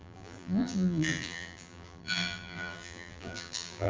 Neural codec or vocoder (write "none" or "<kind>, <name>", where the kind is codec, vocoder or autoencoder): vocoder, BigVGAN v2